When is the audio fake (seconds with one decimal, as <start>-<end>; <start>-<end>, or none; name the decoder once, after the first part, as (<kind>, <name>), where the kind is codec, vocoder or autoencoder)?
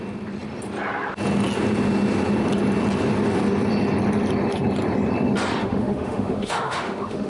5.6-7.3 (autoencoder, DAC-VAE)